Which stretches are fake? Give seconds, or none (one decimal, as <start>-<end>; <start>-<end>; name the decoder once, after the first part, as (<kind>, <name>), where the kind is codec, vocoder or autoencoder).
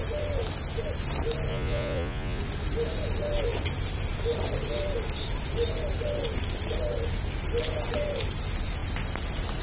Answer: 1.5-2.4 (vocoder, Vocos)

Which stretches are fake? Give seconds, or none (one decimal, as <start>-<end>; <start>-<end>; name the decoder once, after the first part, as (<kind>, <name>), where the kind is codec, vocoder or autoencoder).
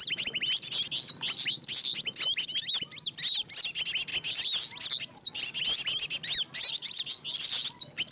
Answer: none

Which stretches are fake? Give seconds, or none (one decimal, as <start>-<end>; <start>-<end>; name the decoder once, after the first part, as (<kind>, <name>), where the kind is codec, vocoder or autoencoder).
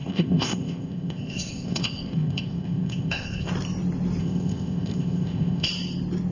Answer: 0.0-3.5 (codec, ZipCodec); 4.2-5.7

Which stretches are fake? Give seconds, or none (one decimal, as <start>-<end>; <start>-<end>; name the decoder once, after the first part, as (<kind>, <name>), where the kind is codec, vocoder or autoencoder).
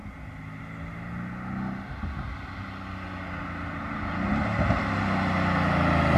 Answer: none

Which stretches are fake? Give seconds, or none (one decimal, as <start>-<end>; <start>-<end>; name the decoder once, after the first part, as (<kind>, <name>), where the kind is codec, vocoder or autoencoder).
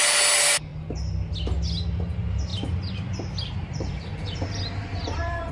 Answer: 2.5-5.5 (vocoder, BigVGAN v2)